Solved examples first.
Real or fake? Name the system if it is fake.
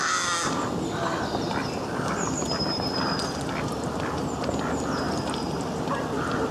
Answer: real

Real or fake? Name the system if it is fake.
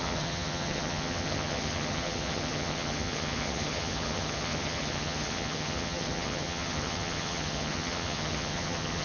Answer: fake, vocoder, HiFi-GAN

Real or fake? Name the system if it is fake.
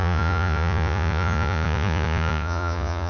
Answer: fake, vocoder, Vocos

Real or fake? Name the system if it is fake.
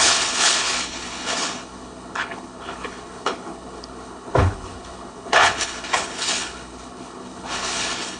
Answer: fake, codec, HILCodec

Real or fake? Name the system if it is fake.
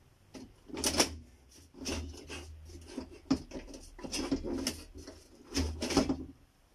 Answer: real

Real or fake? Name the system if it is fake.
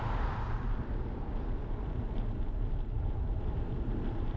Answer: fake, vocoder, BigVGAN v2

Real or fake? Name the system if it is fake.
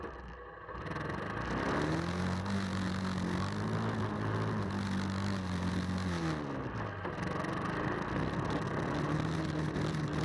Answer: real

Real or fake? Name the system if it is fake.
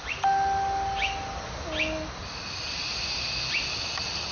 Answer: real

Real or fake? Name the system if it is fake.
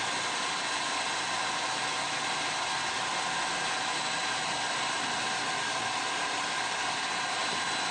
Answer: real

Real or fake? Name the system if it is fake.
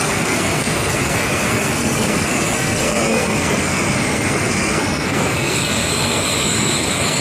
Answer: fake, codec, SNAC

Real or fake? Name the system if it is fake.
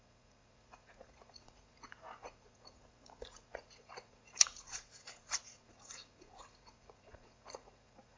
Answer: fake, vocoder, Vocos